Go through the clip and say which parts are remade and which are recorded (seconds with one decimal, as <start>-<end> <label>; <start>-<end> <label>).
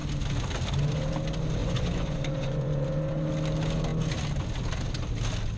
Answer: 0.0-1.6 recorded; 1.6-3.3 remade; 3.3-5.6 recorded